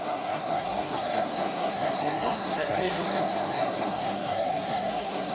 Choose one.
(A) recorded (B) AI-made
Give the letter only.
B